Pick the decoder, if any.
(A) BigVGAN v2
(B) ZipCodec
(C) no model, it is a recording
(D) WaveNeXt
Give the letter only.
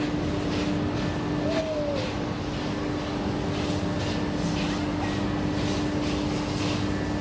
C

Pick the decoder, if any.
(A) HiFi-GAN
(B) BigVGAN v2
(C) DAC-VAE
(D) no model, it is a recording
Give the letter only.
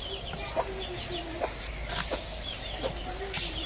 D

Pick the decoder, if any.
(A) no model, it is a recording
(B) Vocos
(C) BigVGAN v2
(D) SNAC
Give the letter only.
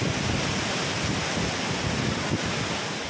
A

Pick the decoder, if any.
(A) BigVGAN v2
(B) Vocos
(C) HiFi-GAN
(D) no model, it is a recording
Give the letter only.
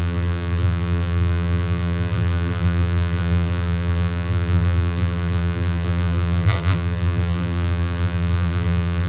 A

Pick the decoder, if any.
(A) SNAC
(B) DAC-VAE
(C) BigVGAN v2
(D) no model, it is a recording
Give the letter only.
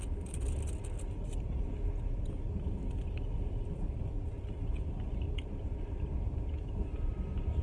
D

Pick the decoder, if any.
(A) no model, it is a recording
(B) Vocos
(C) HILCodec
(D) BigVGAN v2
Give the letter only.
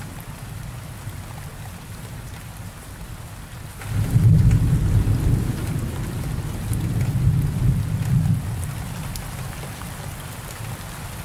A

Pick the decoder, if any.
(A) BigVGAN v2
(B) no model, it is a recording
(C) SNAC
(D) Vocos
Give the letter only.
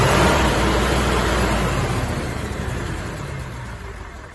A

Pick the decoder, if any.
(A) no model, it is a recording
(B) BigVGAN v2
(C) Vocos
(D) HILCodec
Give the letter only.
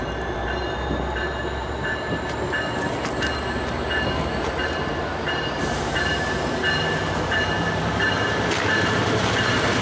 B